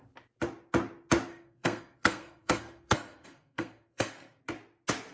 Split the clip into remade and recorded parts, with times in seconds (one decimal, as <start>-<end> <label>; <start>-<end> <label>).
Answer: 0.0-1.3 recorded; 1.3-4.4 remade; 4.4-5.1 recorded